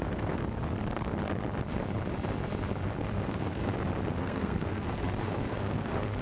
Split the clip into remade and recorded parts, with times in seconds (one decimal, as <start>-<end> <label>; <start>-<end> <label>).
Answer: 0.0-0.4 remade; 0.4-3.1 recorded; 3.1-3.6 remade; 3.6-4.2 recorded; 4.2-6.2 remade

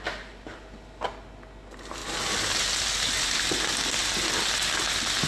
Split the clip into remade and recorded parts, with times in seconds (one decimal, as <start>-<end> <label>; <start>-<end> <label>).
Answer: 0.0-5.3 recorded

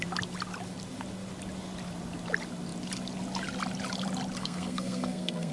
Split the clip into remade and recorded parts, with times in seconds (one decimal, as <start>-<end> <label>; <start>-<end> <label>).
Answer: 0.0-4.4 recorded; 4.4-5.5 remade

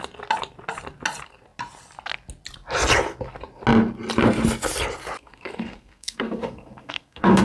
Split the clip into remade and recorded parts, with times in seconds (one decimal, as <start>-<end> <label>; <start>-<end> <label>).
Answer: 0.0-5.2 recorded; 5.2-7.4 remade

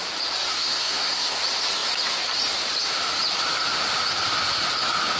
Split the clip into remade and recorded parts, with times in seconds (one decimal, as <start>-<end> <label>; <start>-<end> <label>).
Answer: 0.0-0.5 recorded; 0.5-1.4 remade; 1.4-5.2 recorded

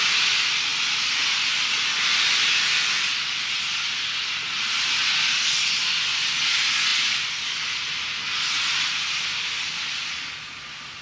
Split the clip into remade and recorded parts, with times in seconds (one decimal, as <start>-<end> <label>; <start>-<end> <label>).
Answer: 0.0-11.0 recorded

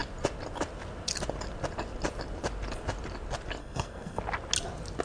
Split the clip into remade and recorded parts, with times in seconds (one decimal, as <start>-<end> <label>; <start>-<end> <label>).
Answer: 0.0-3.6 recorded; 3.6-4.2 remade; 4.2-5.0 recorded